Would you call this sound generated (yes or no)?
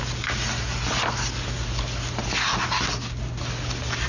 no